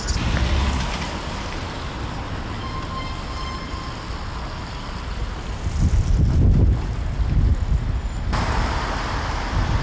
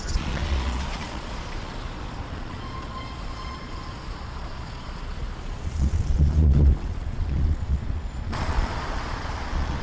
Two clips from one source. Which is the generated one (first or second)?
second